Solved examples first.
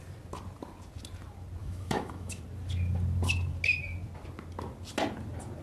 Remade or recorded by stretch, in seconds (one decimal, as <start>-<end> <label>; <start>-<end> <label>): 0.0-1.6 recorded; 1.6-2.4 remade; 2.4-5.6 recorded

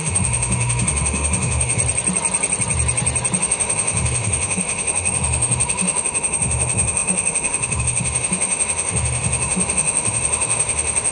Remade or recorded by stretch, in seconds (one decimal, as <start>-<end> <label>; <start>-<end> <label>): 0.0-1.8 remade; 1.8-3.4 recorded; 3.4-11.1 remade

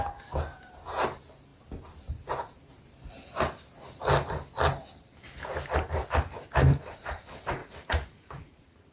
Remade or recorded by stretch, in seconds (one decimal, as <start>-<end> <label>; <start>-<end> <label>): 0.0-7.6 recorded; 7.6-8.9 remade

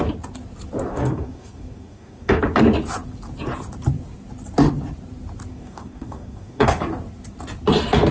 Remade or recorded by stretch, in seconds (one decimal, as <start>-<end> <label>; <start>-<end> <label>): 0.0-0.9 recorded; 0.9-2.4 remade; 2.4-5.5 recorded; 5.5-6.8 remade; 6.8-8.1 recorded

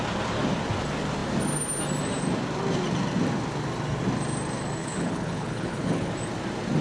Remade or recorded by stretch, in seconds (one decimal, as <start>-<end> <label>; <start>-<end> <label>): 0.0-4.8 recorded; 4.8-6.1 remade; 6.1-6.8 recorded

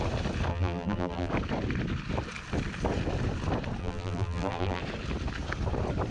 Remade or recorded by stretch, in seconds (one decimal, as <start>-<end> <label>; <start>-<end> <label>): 0.0-0.5 recorded; 0.5-1.3 remade; 1.3-3.8 recorded; 3.8-4.8 remade; 4.8-6.1 recorded

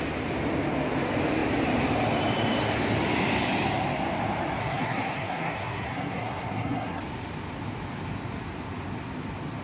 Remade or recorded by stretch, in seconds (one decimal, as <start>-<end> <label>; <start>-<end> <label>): 0.0-4.6 recorded; 4.6-7.0 remade; 7.0-9.6 recorded